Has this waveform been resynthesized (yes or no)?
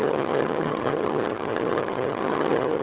yes